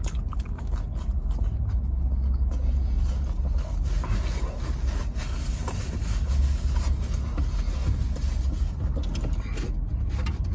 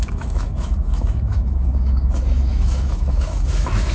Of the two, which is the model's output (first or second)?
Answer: second